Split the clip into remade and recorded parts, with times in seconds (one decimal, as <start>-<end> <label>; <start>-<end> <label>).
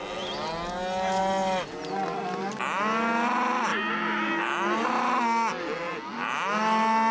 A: 0.0-7.1 recorded